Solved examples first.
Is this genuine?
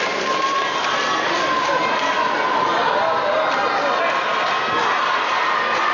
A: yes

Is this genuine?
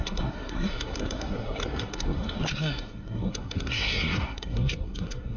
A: no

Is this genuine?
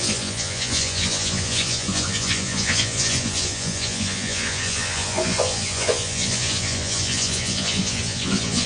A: no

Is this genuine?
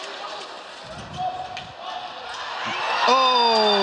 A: yes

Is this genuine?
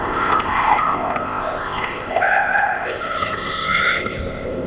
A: no